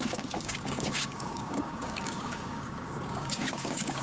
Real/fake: fake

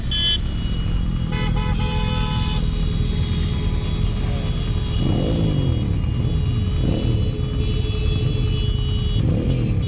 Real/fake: real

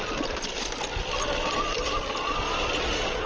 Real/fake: fake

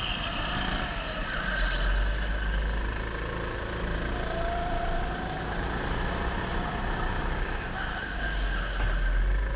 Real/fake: real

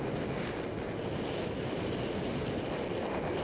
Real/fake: real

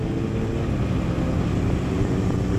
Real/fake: real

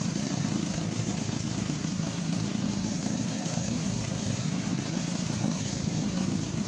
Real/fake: fake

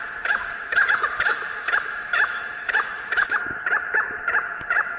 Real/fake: fake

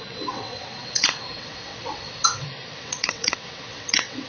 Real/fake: fake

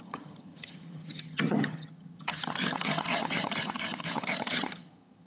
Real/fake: fake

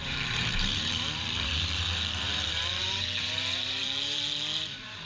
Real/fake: fake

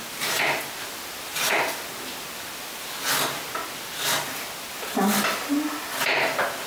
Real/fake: real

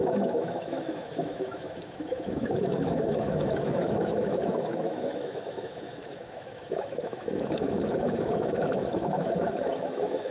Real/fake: fake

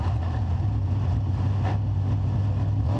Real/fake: real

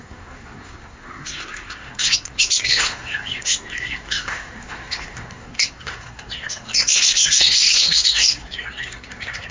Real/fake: fake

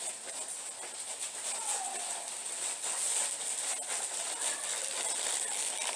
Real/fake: real